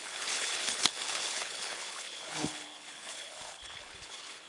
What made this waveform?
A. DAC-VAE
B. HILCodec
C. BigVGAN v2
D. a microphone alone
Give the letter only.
B